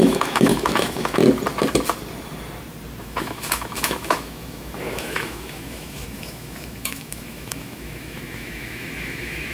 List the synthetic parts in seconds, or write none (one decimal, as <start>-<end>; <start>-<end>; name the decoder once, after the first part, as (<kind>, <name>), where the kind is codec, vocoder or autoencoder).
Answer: 0.0-1.2 (autoencoder, DAC-VAE); 3.0-9.5